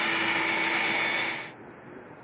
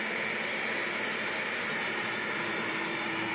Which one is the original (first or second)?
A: first